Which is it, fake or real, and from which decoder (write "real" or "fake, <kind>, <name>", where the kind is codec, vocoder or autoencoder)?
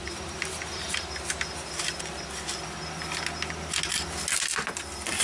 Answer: real